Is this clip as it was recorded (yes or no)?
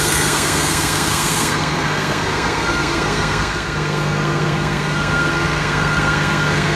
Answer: no